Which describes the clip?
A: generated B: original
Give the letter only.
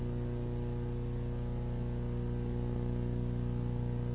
B